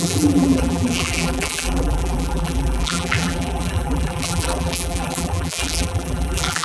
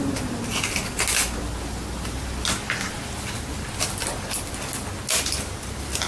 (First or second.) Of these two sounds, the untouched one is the second